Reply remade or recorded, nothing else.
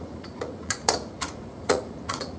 remade